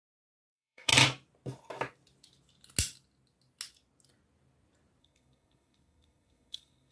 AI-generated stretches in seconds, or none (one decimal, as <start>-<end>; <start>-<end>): 0.0-0.9; 5.0-6.9